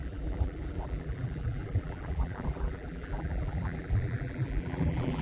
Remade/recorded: remade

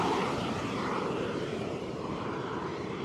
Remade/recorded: remade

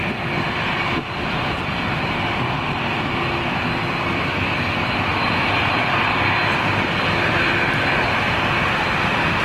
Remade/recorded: recorded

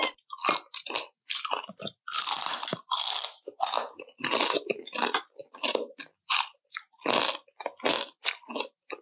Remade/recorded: recorded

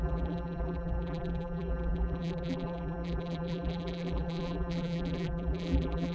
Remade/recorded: remade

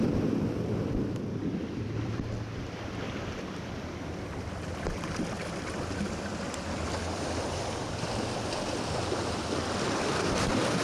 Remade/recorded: remade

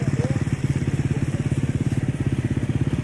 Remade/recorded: recorded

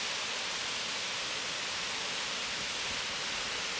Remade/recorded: recorded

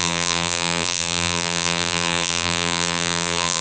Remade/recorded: remade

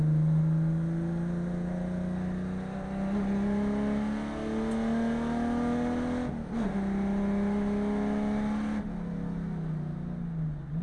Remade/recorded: recorded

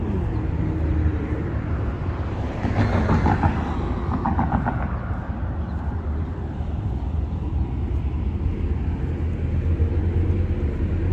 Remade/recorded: recorded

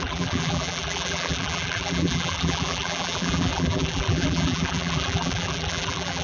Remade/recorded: remade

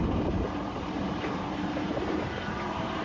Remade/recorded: remade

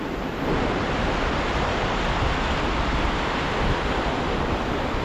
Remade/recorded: recorded